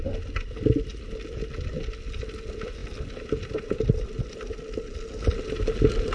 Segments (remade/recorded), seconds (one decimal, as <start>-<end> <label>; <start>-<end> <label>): 0.0-6.1 recorded